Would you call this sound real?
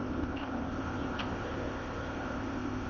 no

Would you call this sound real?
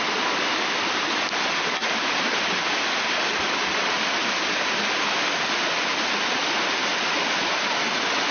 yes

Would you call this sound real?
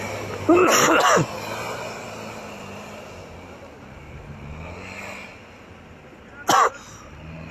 yes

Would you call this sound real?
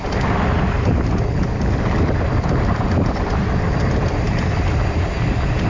yes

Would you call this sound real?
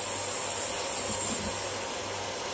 yes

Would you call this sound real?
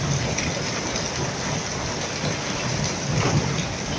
yes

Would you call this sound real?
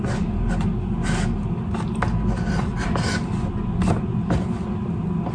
yes